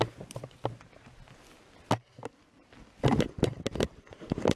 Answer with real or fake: real